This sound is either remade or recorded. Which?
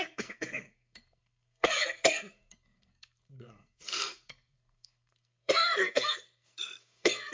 remade